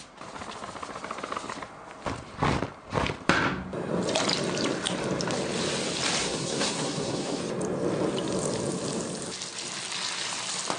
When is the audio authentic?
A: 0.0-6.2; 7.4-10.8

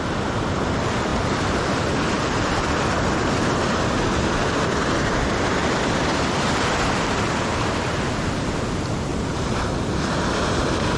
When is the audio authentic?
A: 0.0-5.6; 7.5-9.1; 9.6-11.0

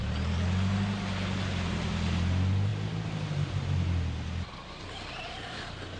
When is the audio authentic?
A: 0.0-6.0

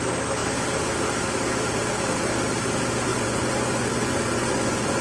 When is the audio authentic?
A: 0.0-3.1

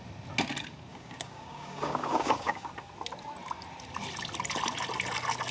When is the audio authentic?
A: 0.0-0.9; 2.7-5.5

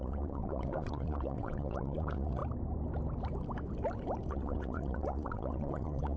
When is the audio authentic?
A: 2.4-4.3

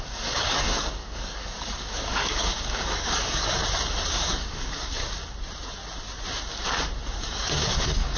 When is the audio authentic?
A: 3.6-4.1; 5.2-7.2

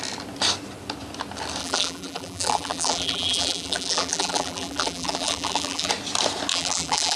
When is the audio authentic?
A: 0.0-1.6; 5.9-6.5